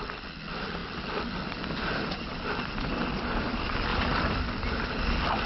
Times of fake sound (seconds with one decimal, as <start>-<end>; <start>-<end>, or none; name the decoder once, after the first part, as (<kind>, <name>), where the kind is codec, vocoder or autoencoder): none